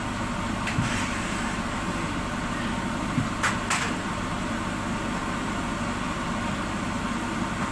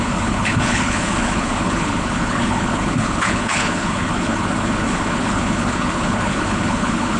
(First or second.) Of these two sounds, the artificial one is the second